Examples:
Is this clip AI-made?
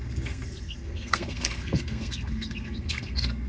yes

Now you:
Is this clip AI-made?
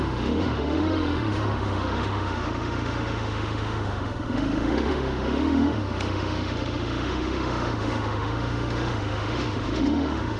yes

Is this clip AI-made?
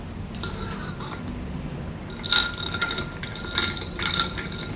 no